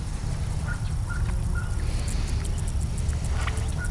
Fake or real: real